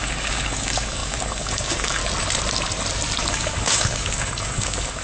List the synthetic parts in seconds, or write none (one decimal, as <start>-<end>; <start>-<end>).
0.0-2.0; 3.2-5.0